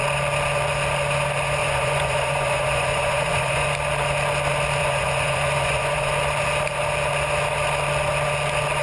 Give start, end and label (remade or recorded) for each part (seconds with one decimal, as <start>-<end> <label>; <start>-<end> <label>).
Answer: 0.0-1.6 recorded; 1.6-3.7 remade; 3.7-4.8 recorded; 4.8-6.1 remade; 6.1-8.8 recorded